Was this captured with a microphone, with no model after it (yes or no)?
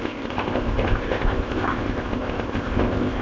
no